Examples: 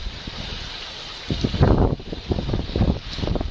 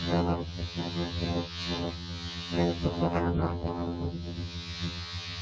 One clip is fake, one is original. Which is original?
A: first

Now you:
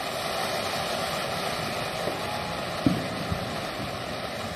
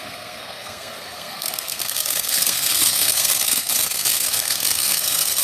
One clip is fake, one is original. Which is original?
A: first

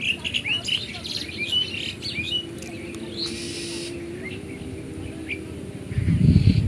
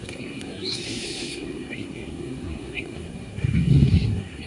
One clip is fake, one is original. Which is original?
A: first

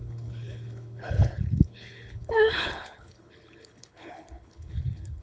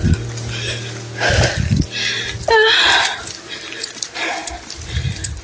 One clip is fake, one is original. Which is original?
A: second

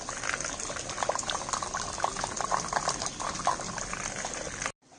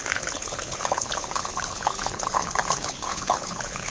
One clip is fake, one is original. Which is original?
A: first